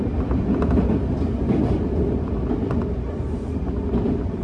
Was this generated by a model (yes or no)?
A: yes